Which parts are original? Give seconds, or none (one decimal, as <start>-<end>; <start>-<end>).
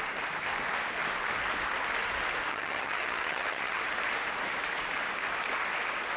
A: 0.0-2.5; 3.8-6.2